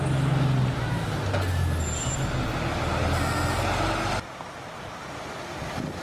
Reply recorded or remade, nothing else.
recorded